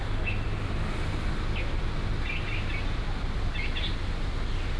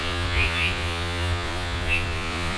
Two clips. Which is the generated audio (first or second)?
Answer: second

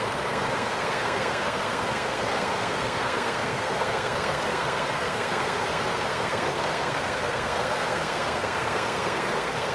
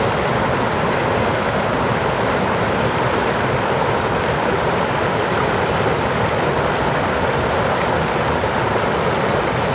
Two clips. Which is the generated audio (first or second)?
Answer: first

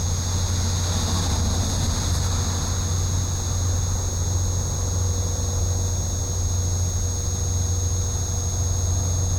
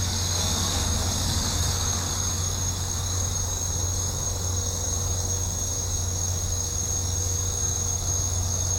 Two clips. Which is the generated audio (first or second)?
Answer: second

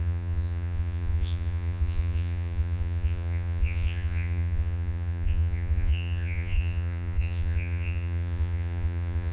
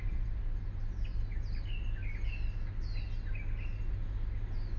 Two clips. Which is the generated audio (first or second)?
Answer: first